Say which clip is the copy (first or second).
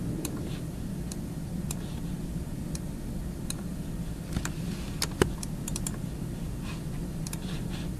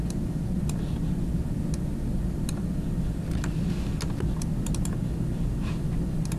first